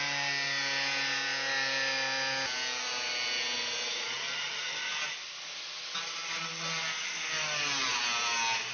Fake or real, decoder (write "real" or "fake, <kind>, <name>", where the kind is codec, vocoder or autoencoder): real